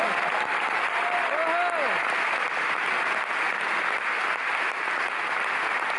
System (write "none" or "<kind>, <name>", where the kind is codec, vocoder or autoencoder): none